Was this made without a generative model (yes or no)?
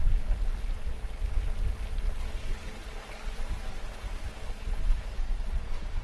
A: yes